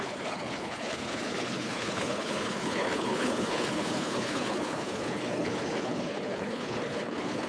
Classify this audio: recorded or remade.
remade